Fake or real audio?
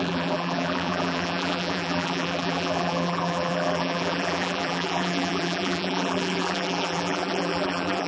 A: fake